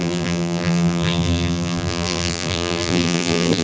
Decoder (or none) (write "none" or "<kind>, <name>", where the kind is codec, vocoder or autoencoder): vocoder, BigVGAN v2